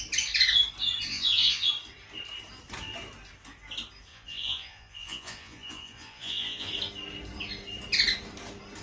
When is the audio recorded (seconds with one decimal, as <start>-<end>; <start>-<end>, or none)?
0.0-1.1; 1.7-4.1; 6.7-8.8